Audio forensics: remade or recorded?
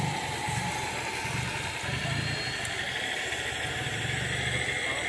recorded